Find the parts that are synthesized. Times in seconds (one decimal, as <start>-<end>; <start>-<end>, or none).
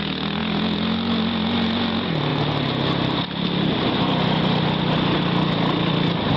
none